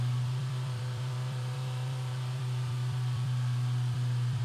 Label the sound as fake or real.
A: fake